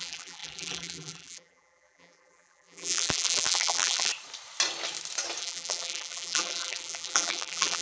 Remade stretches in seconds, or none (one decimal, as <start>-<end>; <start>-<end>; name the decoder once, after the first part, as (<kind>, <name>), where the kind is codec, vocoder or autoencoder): 0.0-4.1 (vocoder, BigVGAN v2); 5.4-7.8